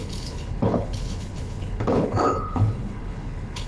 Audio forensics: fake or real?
fake